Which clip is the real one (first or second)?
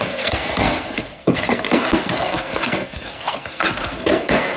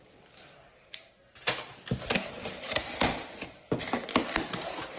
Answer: second